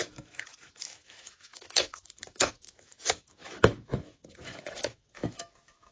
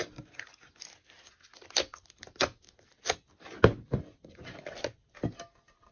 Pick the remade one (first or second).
first